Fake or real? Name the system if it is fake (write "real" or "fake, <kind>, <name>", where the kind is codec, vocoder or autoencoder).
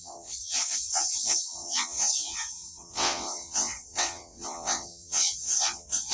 fake, vocoder, WaveNeXt